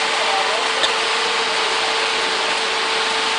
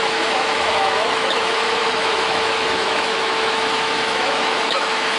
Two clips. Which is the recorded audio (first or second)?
first